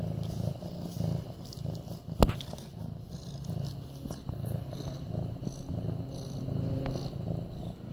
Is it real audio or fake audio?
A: real